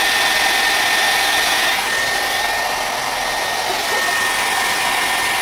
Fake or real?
real